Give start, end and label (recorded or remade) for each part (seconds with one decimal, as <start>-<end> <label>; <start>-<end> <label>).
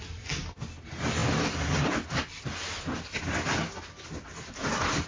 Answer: 0.0-5.1 recorded